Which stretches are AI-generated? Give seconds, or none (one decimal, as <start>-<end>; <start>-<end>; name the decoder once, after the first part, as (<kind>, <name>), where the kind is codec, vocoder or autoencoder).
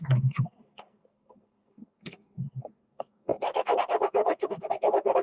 0.0-5.2 (codec, SNAC)